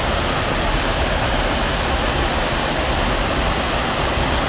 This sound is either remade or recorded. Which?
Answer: recorded